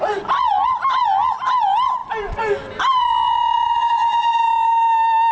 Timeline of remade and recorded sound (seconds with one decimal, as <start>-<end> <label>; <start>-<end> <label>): 0.0-5.3 recorded